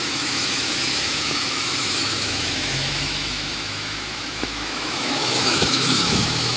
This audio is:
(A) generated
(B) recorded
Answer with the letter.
A